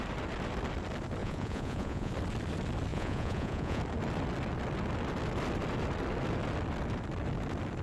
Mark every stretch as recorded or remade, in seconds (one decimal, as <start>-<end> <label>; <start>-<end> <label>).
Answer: 0.0-1.2 recorded; 1.2-2.1 remade; 2.1-2.9 recorded; 2.9-3.8 remade; 3.8-7.8 recorded